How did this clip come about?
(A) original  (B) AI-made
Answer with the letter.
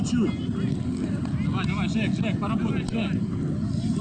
A